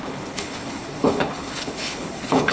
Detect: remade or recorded remade